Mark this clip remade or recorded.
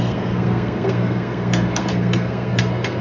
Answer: remade